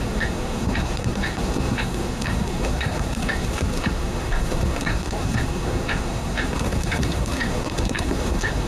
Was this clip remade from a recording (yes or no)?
yes